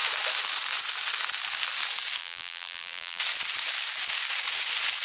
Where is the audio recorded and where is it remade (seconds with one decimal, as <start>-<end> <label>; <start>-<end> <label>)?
0.0-2.2 recorded; 2.2-3.2 remade; 3.2-5.0 recorded